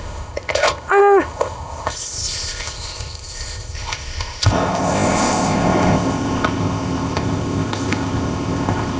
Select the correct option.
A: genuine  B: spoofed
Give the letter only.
B